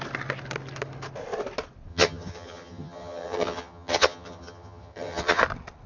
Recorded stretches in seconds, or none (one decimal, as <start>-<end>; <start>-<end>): 0.0-1.9; 5.4-5.9